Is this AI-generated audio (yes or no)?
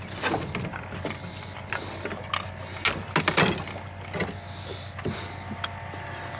no